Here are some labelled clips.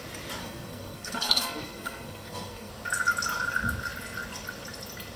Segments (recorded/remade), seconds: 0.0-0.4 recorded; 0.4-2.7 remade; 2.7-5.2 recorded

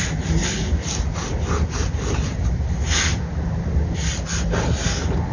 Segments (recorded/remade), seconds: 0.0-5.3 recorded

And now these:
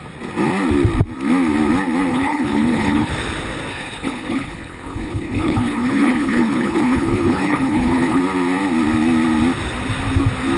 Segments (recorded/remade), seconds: 0.0-2.1 recorded; 2.1-3.1 remade; 3.1-3.7 recorded; 3.7-8.2 remade; 8.2-10.6 recorded

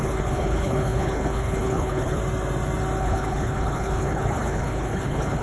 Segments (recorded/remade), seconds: 0.0-2.2 remade; 2.2-3.0 recorded; 3.0-5.4 remade

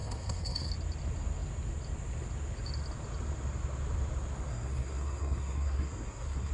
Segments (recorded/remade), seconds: 0.0-0.7 remade; 0.7-4.5 recorded; 4.5-6.5 remade

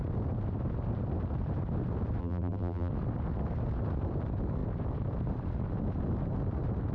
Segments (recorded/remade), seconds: 0.0-2.2 recorded; 2.2-2.9 remade; 2.9-6.9 recorded